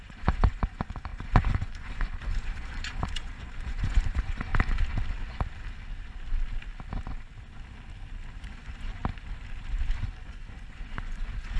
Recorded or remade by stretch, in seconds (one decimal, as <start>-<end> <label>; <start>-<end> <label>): 0.0-4.5 remade; 4.5-8.4 recorded; 8.4-9.0 remade; 9.0-10.0 recorded; 10.0-11.6 remade